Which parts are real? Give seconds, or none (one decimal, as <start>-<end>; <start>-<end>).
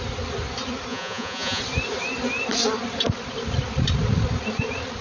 0.0-0.9; 1.6-5.0